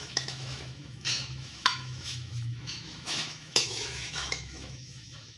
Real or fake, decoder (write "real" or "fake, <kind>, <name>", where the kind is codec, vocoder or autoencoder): fake, autoencoder, DAC-VAE